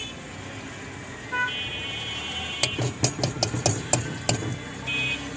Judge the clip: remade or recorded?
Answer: recorded